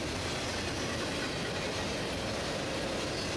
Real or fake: real